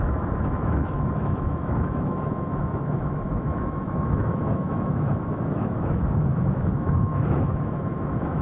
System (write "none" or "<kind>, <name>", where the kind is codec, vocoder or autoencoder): autoencoder, DAC-VAE